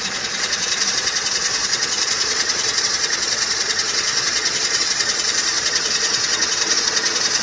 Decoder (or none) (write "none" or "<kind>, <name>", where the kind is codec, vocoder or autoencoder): vocoder, Vocos